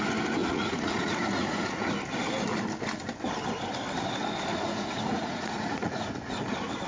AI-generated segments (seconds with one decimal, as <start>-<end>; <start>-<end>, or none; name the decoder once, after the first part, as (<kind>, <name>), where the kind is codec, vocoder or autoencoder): 0.4-1.9 (vocoder, Vocos); 4.5-6.4